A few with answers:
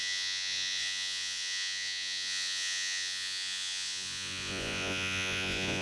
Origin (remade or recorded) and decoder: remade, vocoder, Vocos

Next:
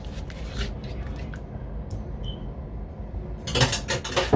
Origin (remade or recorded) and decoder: recorded